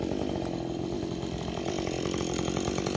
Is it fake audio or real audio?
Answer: real